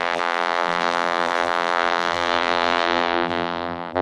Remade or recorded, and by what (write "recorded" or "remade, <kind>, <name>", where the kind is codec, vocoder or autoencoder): remade, vocoder, BigVGAN v2